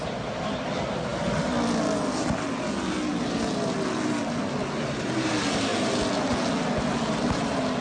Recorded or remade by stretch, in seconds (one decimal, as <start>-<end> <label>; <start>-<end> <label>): 0.0-7.8 recorded